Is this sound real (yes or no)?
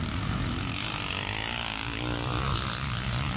yes